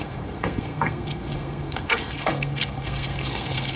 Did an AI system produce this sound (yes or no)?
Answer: yes